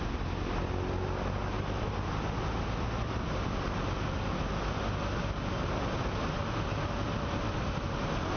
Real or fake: real